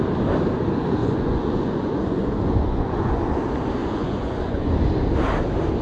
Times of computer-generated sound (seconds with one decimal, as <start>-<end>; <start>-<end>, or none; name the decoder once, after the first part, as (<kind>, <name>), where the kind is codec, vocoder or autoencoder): 1.0-3.2 (vocoder, Vocos); 3.8-4.7